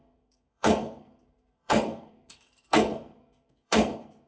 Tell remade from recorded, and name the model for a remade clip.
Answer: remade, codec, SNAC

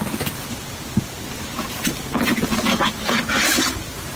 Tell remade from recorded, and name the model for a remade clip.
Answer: recorded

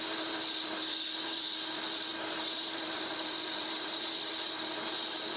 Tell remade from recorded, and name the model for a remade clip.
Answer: remade, vocoder, BigVGAN v2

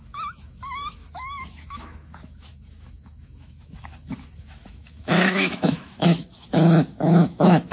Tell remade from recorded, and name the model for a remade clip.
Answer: remade, autoencoder, DAC-VAE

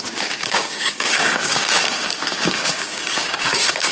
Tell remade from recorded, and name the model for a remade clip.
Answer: remade, codec, DAC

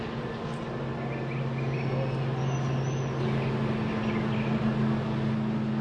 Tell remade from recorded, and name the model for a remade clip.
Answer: recorded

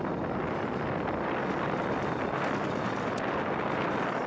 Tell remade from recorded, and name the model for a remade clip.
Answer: recorded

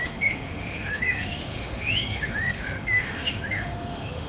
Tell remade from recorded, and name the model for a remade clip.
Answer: remade, autoencoder, DAC-VAE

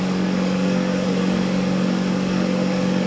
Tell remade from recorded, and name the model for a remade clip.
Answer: remade, codec, DAC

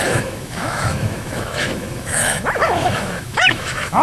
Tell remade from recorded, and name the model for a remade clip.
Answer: remade, autoencoder, DAC-VAE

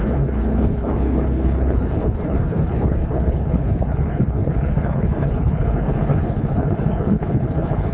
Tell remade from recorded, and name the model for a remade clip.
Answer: remade, codec, HILCodec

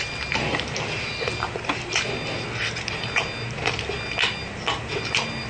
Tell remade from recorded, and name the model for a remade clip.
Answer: recorded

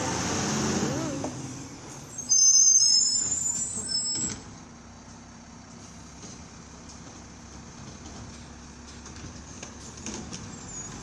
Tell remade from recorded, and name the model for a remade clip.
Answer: recorded